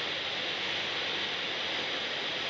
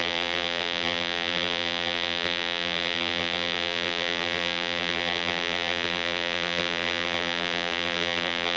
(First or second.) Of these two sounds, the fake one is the second